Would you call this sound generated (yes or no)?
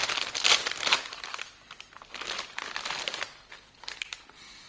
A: no